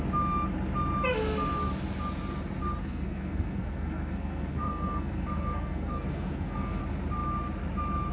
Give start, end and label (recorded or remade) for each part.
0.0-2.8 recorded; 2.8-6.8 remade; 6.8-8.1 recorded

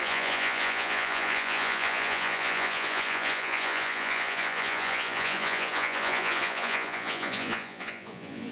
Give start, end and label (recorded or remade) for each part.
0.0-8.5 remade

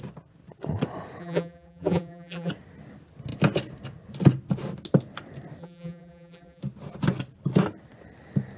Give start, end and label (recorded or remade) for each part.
0.0-1.2 recorded; 1.2-2.5 remade; 2.5-5.6 recorded; 5.6-6.6 remade; 6.6-8.6 recorded

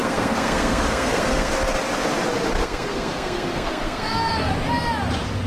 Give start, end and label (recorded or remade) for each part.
0.0-1.5 remade; 1.5-2.6 recorded; 2.6-4.5 remade; 4.5-5.5 recorded